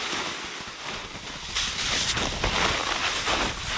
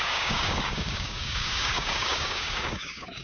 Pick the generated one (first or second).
second